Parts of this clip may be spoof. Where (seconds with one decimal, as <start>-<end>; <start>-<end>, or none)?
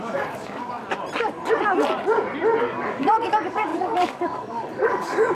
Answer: 0.0-0.8; 2.6-5.3